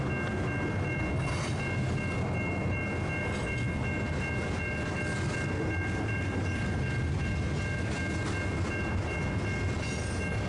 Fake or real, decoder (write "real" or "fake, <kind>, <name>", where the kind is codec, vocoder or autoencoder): real